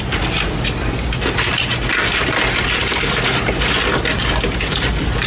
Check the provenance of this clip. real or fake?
real